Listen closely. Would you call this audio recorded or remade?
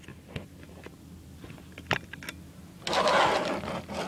recorded